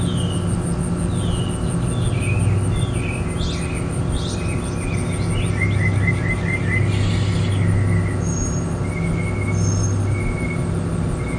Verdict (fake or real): real